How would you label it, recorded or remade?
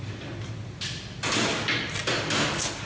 recorded